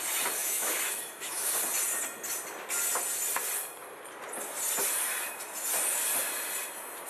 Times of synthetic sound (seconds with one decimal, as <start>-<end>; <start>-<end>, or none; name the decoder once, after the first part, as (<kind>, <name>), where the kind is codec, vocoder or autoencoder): 0.4-1.5 (autoencoder, DAC-VAE)